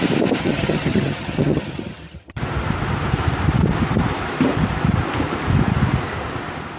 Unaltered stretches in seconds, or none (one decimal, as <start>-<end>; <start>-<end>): 0.0-0.4; 2.4-6.8